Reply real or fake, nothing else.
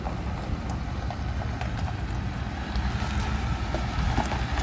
real